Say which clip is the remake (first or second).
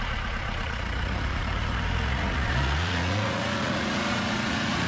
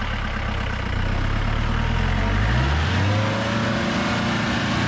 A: first